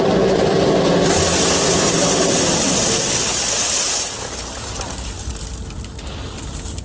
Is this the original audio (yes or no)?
yes